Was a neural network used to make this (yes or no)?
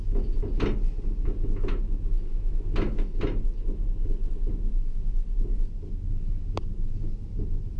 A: no